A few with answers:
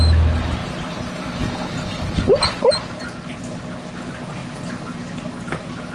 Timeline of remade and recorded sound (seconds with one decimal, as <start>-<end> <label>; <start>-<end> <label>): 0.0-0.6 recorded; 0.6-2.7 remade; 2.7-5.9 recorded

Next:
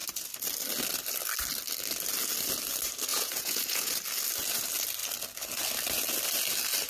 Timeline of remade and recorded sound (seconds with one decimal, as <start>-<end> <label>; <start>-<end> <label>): 0.0-3.1 recorded; 3.1-3.9 remade; 3.9-6.9 recorded

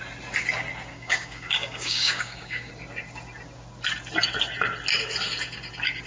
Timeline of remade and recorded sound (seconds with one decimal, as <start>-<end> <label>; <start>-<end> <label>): 0.0-0.9 recorded; 0.9-2.7 remade; 2.7-6.1 recorded